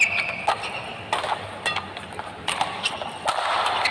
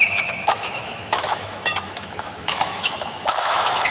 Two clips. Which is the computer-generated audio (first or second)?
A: second